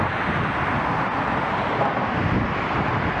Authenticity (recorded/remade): recorded